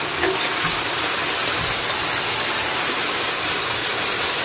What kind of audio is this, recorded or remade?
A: recorded